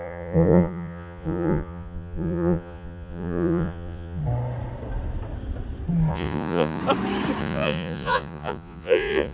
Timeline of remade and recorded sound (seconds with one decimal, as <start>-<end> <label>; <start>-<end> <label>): 0.0-4.2 remade; 4.2-6.1 recorded; 6.1-6.8 remade; 6.8-7.4 recorded; 7.4-9.3 remade